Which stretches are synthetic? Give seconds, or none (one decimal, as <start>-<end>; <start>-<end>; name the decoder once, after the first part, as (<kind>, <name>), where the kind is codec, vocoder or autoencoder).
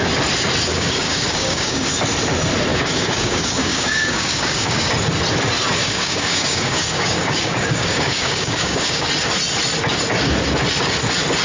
0.7-1.9 (codec, DAC); 2.7-4.9; 5.8-9.1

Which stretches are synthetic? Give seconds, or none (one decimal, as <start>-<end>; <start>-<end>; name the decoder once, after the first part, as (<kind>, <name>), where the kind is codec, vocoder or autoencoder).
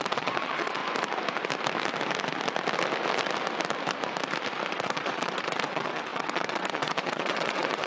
0.0-0.8 (vocoder, WaveNeXt); 4.7-7.9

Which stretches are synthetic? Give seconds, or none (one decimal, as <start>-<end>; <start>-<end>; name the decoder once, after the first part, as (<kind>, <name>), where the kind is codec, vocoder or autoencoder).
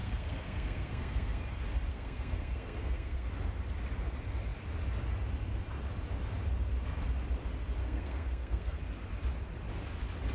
0.0-1.4 (codec, SNAC); 1.9-3.3; 7.8-8.8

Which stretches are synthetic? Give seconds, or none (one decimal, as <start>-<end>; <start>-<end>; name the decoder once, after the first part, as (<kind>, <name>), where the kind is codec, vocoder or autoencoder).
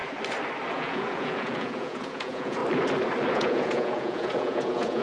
0.7-2.6 (vocoder, Vocos); 3.3-5.0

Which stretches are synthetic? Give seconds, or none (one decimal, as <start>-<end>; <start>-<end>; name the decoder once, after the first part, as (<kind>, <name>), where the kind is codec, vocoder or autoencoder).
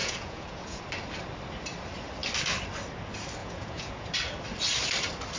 0.0-0.8 (vocoder, Vocos); 3.4-4.1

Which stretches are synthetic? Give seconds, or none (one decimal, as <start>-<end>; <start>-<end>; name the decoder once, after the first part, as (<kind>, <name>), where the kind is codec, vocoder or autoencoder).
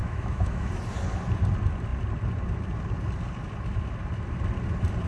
0.0-0.7 (autoencoder, DAC-VAE)